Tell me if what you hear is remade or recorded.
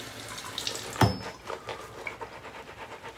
recorded